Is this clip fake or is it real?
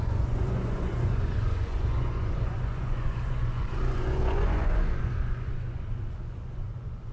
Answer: fake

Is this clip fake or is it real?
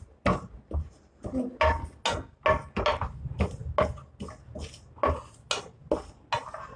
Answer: real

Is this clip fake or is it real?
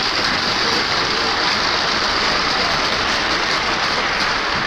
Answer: fake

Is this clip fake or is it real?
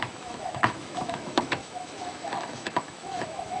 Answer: fake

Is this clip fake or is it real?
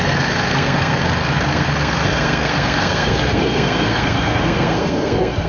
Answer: fake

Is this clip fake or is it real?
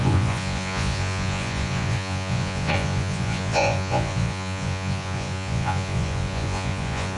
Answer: fake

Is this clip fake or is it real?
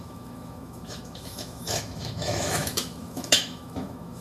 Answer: fake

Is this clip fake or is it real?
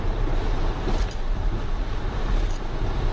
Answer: fake